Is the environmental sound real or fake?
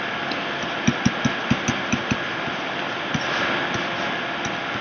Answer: real